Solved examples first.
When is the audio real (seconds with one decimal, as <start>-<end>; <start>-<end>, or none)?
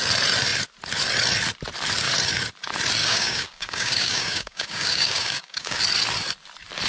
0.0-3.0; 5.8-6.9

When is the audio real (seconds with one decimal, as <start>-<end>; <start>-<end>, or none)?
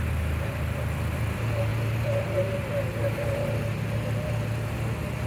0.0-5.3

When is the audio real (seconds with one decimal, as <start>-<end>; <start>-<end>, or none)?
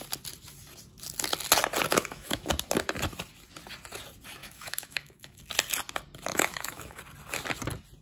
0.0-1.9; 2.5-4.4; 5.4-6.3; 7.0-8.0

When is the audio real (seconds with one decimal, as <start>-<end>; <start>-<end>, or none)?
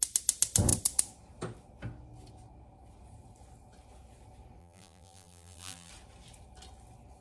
0.0-4.6; 5.9-7.2